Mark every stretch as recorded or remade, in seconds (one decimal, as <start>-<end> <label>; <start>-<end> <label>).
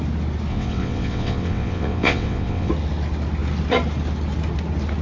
0.0-0.5 recorded; 0.5-2.7 remade; 2.7-5.0 recorded